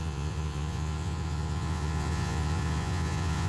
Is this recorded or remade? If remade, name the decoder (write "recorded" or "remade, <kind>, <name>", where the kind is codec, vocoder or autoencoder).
remade, vocoder, Vocos